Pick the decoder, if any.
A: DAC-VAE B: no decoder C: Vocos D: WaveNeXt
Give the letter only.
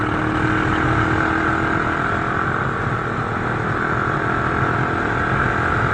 B